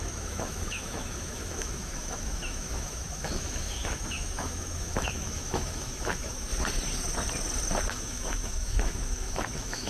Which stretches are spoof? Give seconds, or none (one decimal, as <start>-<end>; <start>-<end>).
0.0-6.5; 7.9-9.9